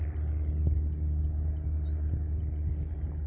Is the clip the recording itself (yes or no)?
yes